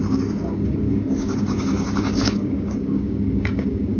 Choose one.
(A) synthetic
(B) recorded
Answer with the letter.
A